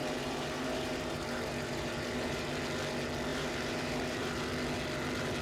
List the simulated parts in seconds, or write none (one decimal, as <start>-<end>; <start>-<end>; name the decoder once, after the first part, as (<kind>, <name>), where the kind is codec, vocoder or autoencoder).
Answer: 0.0-2.5 (vocoder, BigVGAN v2); 3.3-4.3